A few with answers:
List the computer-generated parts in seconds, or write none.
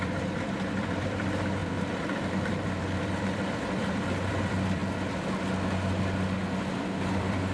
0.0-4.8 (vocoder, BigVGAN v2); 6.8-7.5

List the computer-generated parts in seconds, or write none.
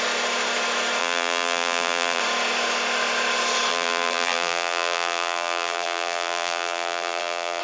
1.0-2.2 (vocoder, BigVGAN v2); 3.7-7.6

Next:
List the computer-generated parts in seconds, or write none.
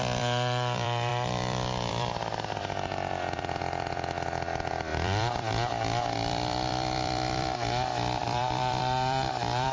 0.0-9.7 (vocoder, BigVGAN v2)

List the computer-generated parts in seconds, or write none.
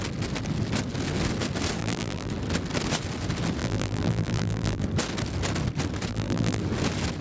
1.8-2.3 (vocoder, BigVGAN v2); 3.6-4.8; 6.1-6.6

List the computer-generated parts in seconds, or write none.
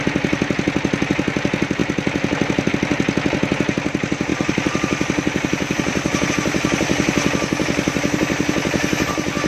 4.3-6.3 (vocoder, BigVGAN v2)